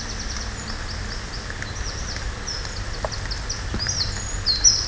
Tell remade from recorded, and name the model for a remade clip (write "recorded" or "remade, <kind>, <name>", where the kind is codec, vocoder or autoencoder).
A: recorded